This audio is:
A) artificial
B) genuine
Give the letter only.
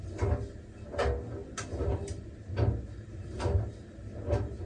B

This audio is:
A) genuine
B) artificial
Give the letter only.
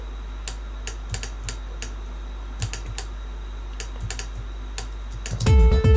A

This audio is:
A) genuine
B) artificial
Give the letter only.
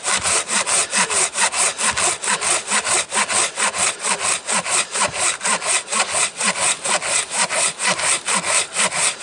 A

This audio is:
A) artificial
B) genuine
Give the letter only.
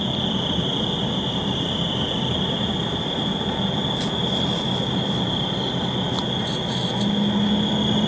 B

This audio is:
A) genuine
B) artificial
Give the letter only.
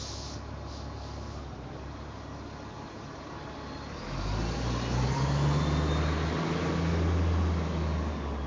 A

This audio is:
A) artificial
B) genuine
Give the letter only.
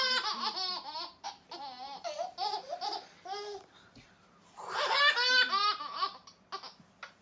B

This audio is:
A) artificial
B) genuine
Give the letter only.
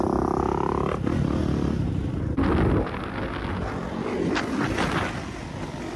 B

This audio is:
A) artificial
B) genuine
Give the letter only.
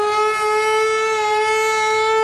B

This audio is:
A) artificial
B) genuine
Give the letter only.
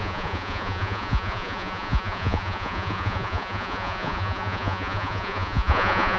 A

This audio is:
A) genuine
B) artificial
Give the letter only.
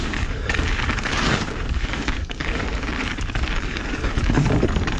B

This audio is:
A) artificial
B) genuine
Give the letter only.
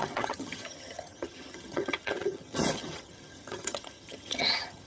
A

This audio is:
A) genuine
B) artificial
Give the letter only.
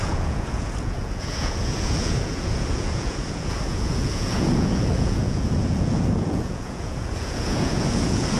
B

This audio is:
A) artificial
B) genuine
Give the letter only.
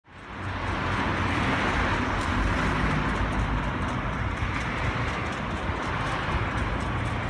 B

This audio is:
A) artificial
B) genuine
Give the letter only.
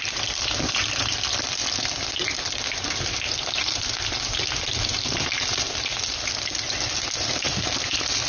A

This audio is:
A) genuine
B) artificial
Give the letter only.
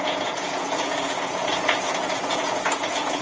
B